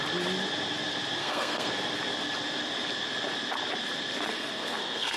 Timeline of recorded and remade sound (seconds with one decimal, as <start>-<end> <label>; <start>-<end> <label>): 0.0-1.2 recorded; 1.2-1.7 remade; 1.7-4.3 recorded; 4.3-5.2 remade